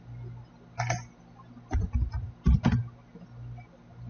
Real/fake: real